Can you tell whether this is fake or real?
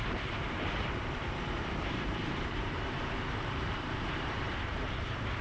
fake